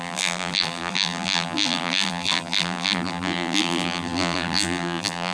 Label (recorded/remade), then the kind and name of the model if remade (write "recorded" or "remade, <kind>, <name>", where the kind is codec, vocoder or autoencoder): remade, vocoder, BigVGAN v2